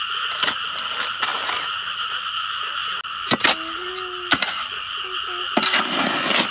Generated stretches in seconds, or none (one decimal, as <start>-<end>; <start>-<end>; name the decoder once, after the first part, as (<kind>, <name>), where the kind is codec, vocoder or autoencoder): none